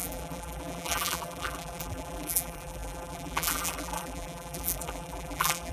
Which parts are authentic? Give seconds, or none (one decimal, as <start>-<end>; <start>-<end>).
none